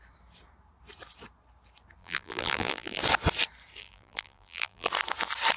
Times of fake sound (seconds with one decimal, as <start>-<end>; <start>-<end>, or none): 2.0-3.0; 3.8-4.9